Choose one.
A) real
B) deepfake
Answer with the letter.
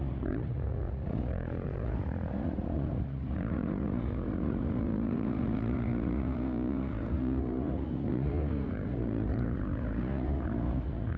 B